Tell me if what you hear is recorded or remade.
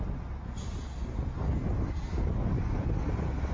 recorded